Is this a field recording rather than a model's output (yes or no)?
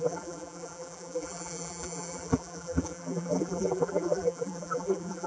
no